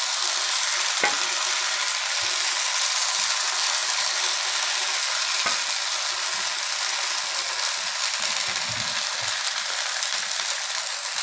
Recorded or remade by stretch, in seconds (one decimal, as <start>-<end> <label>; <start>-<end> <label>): 0.0-11.2 recorded